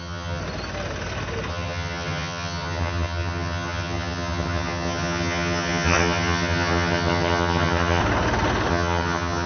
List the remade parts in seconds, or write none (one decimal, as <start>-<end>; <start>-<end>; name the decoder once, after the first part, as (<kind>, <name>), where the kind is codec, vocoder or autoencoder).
0.0-0.4 (vocoder, HiFi-GAN); 1.5-8.0; 8.7-9.5